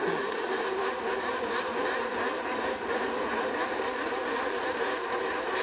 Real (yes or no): no